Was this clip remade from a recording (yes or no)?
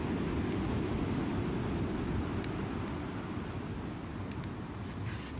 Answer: yes